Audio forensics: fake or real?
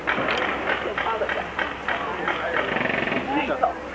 real